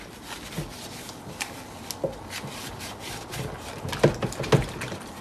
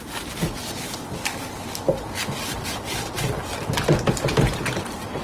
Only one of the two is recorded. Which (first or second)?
first